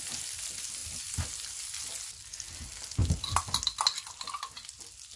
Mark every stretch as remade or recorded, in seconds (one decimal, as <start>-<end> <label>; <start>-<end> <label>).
0.0-0.8 recorded; 0.8-1.6 remade; 1.6-3.0 recorded; 3.0-4.2 remade; 4.2-5.2 recorded